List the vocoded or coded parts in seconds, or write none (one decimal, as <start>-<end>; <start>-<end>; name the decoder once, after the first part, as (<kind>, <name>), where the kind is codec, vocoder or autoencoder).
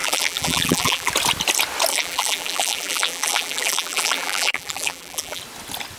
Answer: 0.0-1.1 (vocoder, BigVGAN v2); 1.9-5.4